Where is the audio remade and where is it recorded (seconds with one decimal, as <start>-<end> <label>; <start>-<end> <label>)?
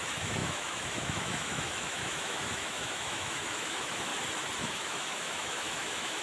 0.0-4.1 remade; 4.1-4.6 recorded; 4.6-6.2 remade